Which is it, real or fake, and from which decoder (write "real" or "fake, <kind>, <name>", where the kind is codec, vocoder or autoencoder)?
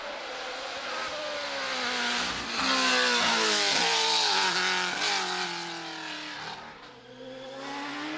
real